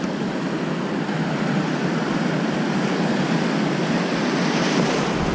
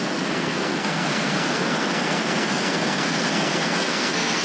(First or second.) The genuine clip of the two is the first